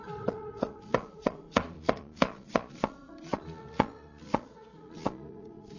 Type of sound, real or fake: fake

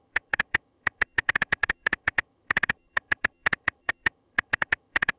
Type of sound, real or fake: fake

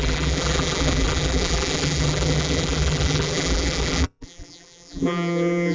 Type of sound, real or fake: fake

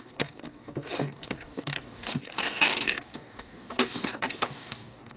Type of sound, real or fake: fake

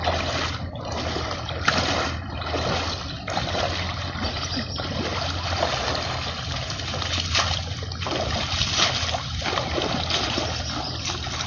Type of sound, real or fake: real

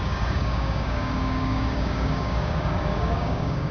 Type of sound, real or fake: fake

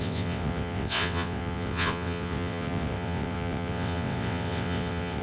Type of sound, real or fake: fake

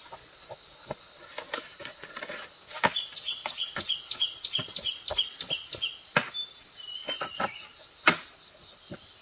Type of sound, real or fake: real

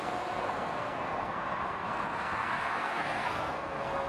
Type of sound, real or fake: fake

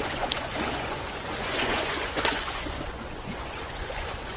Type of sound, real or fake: fake